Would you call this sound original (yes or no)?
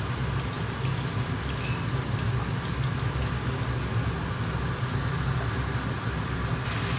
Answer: yes